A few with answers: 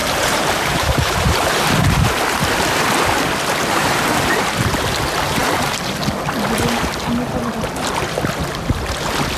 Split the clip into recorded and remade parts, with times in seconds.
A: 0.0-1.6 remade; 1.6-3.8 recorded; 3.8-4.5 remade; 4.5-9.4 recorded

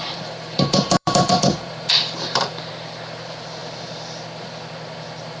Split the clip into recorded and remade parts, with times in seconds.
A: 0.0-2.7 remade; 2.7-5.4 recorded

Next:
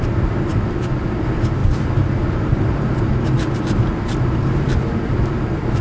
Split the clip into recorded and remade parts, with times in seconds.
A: 0.0-5.8 remade